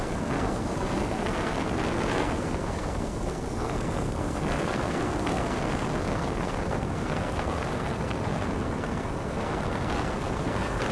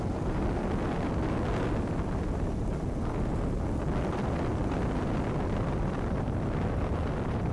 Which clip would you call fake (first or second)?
first